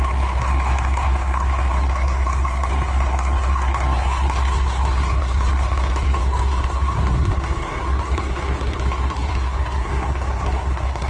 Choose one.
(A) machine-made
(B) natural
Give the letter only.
A